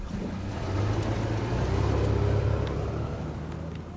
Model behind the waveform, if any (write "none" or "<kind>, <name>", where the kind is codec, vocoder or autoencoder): none